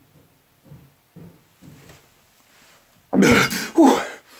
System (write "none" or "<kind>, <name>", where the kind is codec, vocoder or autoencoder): none